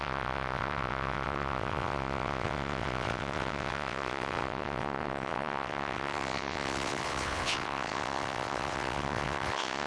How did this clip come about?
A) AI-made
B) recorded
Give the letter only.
A